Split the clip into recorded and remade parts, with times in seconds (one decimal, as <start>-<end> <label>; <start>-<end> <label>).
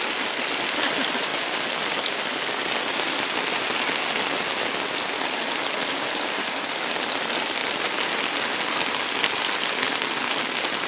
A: 0.0-10.9 recorded